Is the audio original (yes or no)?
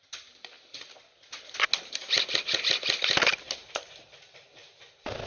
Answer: yes